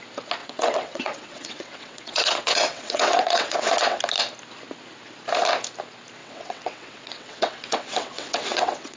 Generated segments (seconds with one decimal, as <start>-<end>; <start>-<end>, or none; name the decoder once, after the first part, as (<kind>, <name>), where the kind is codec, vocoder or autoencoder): 0.4-4.0 (vocoder, WaveNeXt); 6.2-9.0